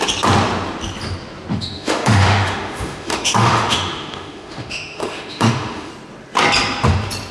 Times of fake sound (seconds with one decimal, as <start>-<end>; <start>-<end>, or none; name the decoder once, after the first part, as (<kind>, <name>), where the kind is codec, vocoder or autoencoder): 1.5-5.9 (autoencoder, DAC-VAE)